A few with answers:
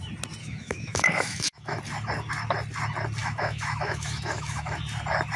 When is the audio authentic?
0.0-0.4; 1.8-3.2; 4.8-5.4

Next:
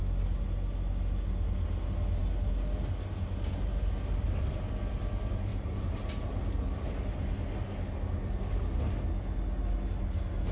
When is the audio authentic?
0.0-5.5; 6.0-10.5

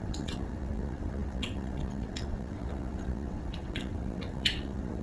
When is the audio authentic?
none